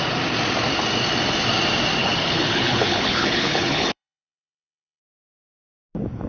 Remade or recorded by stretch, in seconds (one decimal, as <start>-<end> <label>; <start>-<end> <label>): 0.0-2.0 recorded; 2.0-5.0 remade; 5.0-6.3 recorded